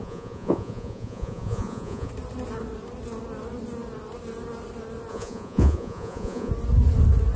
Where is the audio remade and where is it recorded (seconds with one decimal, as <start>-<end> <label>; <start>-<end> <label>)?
0.0-2.1 remade; 2.1-5.1 recorded; 5.1-6.5 remade; 6.5-7.4 recorded